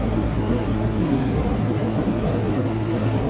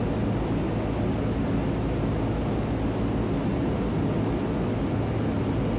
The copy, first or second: first